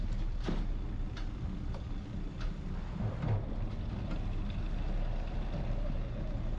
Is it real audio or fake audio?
real